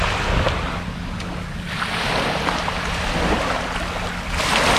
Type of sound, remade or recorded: recorded